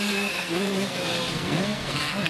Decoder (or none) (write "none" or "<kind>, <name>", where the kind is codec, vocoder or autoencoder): codec, SNAC